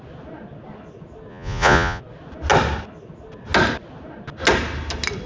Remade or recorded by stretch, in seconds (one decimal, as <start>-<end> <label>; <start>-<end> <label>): 0.0-1.3 recorded; 1.3-2.0 remade; 2.0-5.3 recorded